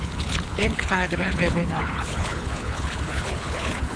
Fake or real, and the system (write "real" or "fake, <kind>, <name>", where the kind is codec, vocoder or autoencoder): fake, codec, HILCodec